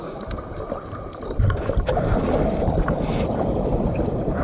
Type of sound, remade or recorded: remade